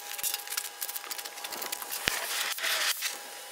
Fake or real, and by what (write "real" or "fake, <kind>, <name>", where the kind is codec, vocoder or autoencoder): real